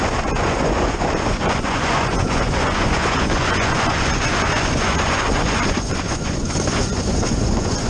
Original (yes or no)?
no